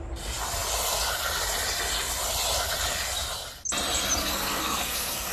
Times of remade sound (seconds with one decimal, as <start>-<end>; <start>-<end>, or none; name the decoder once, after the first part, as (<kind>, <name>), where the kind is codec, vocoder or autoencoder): 4.2-5.3 (codec, SNAC)